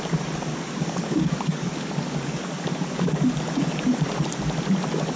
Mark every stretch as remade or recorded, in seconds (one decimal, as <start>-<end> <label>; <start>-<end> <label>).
0.0-0.5 recorded; 0.5-3.4 remade; 3.4-5.2 recorded